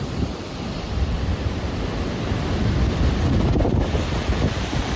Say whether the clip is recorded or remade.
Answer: remade